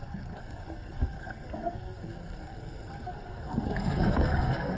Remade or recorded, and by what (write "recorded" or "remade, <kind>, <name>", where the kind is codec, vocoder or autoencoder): remade, codec, SNAC